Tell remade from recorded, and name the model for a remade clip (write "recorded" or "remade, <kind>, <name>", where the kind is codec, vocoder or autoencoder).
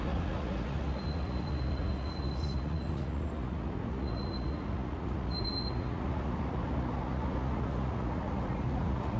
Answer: remade, vocoder, Vocos